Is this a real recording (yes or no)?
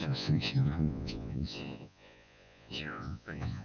no